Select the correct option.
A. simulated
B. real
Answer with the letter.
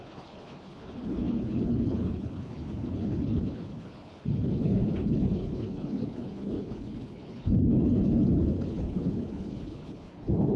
A